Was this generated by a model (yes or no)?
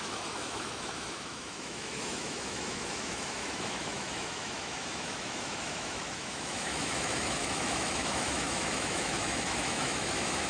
yes